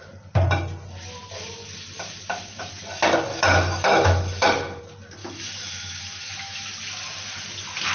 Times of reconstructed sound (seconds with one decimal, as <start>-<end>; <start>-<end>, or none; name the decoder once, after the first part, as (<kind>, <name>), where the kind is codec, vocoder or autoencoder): 3.3-4.8 (autoencoder, DAC-VAE); 5.2-6.7